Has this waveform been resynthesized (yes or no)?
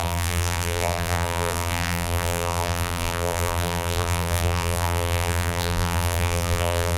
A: yes